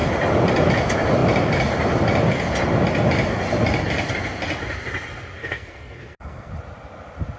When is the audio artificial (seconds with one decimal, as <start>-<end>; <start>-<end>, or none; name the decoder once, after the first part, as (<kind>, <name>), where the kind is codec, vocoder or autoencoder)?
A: 5.4-6.5 (codec, SNAC)